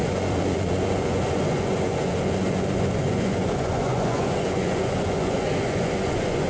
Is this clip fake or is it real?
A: fake